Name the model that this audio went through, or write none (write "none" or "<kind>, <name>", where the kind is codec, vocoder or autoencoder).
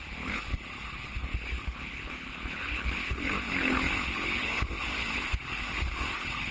codec, HILCodec